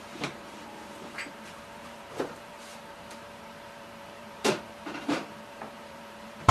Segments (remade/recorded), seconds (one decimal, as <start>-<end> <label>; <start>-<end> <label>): 0.0-6.5 remade